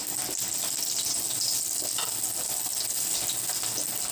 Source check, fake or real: real